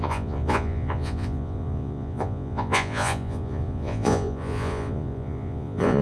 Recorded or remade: remade